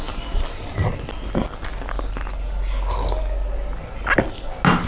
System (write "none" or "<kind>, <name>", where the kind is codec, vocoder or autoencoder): none